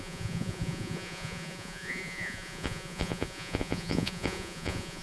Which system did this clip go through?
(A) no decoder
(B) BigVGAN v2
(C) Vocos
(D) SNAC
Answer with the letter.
C